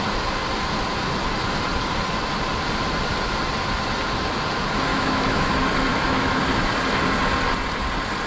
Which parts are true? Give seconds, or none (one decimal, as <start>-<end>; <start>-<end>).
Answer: 0.0-4.9; 5.5-5.9; 6.4-8.3